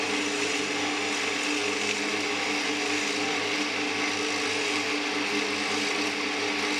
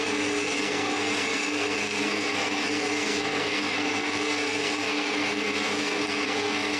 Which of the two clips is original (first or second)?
first